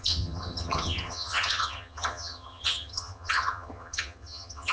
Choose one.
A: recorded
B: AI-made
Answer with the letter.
B